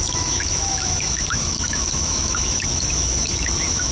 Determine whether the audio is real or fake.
fake